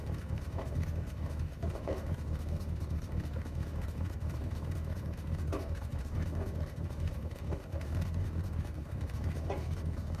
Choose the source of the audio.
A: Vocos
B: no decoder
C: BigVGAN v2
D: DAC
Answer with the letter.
D